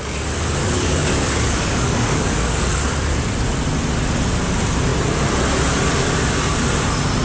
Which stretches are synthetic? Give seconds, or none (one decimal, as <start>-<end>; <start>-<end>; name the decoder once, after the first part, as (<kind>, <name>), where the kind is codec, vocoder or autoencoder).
0.6-2.7 (codec, DAC)